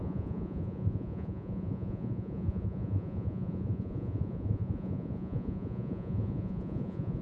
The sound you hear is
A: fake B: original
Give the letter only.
A